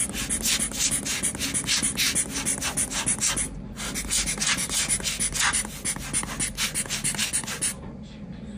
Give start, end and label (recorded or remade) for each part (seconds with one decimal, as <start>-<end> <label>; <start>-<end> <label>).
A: 0.0-8.6 recorded